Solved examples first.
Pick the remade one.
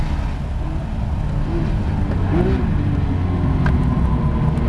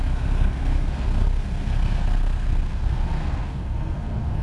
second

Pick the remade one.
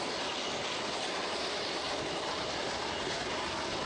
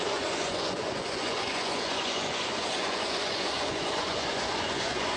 second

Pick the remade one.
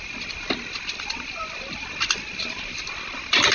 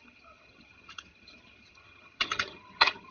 second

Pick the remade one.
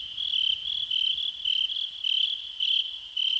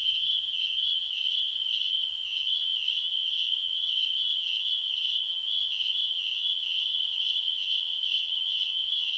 second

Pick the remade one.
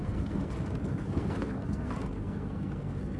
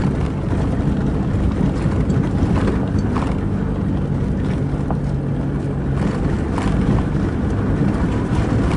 first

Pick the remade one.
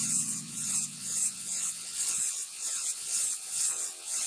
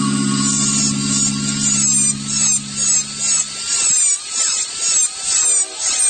first